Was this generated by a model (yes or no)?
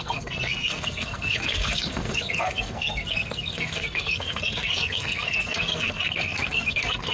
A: yes